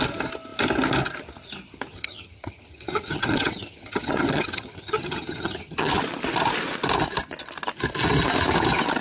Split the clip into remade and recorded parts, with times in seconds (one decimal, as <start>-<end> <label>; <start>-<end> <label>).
0.0-1.9 recorded; 1.9-5.9 remade; 5.9-9.0 recorded